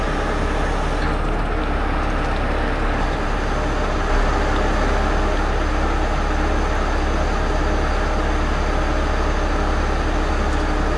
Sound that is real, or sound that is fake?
real